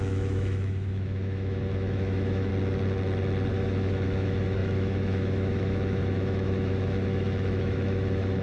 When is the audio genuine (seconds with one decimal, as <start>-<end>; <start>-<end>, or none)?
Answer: 2.5-3.5

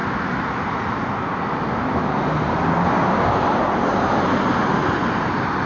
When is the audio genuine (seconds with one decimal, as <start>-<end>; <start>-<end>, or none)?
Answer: 0.0-5.7

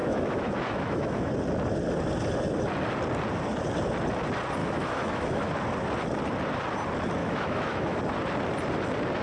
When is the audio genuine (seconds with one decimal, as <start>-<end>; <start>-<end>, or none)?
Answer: 1.3-4.6; 5.5-7.2; 8.0-9.2

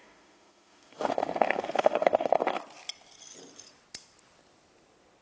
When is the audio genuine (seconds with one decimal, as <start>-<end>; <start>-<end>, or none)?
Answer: 2.6-5.2

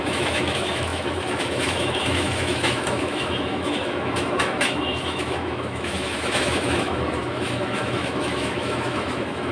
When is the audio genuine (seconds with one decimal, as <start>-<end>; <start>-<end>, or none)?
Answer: none

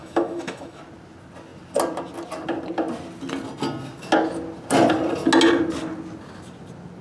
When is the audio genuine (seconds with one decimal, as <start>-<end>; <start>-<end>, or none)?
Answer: 0.8-7.0